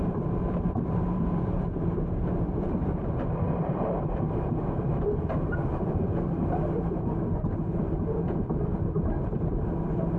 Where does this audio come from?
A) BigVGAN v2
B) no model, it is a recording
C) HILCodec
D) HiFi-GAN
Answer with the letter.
A